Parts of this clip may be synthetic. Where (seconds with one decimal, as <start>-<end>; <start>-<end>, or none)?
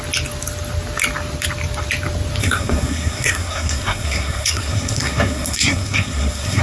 2.4-6.6